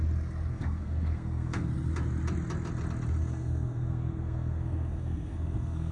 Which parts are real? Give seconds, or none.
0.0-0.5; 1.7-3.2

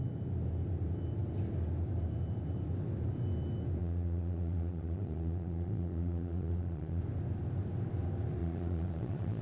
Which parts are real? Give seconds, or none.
0.0-3.8; 7.0-8.4

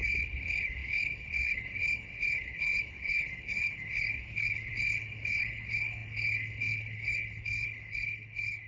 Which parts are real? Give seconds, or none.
none

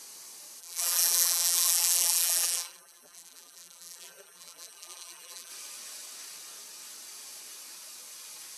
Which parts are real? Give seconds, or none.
0.0-0.6; 5.5-8.6

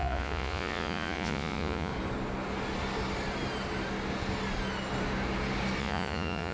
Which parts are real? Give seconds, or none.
1.9-5.8

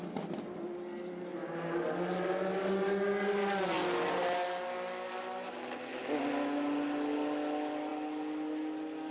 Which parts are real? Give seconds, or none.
0.0-9.1